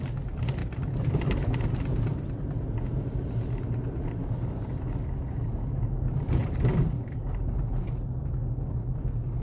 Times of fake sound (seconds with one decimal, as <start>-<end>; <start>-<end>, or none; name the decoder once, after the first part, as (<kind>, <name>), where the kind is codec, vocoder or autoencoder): 0.6-5.0 (vocoder, BigVGAN v2); 6.4-7.8

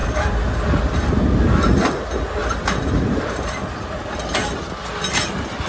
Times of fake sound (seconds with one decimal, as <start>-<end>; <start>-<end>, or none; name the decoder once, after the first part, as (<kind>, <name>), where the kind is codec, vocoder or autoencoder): 2.4-3.6 (vocoder, BigVGAN v2)